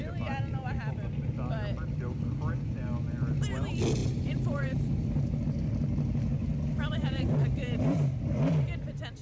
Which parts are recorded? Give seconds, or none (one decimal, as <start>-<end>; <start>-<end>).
0.0-4.0; 5.4-6.4; 8.2-9.2